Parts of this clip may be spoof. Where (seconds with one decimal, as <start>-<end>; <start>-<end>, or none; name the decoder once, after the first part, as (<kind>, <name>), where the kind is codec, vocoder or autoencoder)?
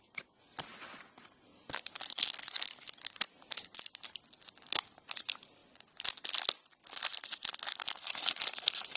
0.0-1.5 (vocoder, BigVGAN v2); 2.9-9.0